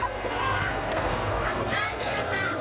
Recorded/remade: remade